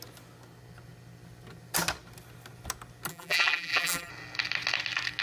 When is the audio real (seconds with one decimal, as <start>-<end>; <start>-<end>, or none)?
0.0-3.1; 4.1-5.2